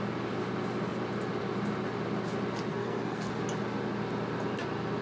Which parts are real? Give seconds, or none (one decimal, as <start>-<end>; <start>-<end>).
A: 0.0-2.7; 3.3-5.0